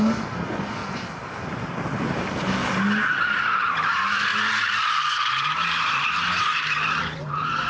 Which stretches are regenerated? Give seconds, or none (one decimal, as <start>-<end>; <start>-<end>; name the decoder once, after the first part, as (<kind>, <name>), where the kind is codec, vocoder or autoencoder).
0.0-0.8 (vocoder, BigVGAN v2); 1.9-2.6; 3.3-4.3; 4.9-7.7